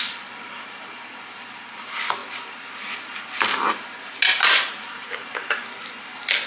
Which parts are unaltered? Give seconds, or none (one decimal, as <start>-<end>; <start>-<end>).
0.0-6.5